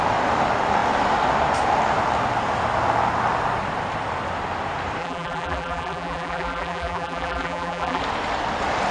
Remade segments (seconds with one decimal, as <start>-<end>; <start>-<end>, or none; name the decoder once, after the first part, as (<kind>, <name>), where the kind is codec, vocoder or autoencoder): 5.0-8.0 (vocoder, BigVGAN v2)